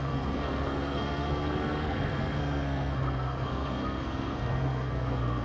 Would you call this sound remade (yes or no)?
yes